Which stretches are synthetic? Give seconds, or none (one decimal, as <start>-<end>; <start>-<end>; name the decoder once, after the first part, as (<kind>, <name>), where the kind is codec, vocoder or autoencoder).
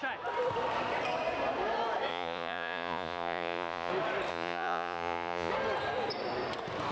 2.1-3.9 (vocoder, Vocos); 4.3-5.5